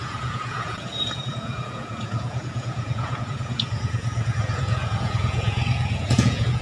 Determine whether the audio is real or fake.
fake